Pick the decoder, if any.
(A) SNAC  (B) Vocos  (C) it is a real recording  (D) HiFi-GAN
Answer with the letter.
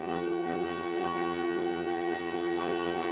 D